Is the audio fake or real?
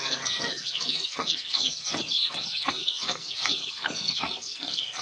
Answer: fake